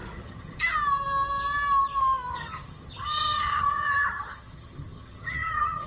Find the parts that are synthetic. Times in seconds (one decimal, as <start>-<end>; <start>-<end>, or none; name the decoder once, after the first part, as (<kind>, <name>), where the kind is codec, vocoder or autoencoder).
0.0-0.6 (vocoder, HiFi-GAN); 2.3-5.9

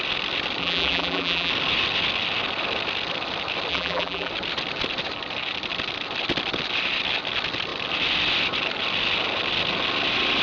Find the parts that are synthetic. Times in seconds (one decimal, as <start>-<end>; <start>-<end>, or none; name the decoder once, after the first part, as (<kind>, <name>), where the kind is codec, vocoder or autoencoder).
0.6-1.5 (vocoder, BigVGAN v2); 3.7-4.3

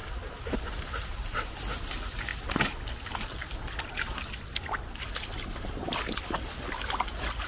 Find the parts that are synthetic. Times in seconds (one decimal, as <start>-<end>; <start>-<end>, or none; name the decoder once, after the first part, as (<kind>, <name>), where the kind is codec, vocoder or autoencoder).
none